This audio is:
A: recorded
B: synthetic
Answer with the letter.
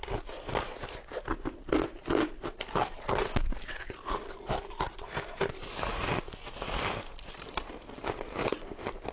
A